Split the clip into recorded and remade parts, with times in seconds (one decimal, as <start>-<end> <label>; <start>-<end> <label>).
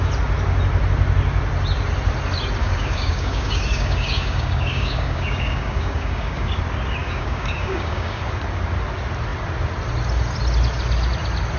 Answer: 0.0-2.6 recorded; 2.6-6.6 remade; 6.6-7.0 recorded; 7.0-8.2 remade; 8.2-11.6 recorded